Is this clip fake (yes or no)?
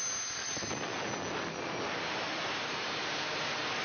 no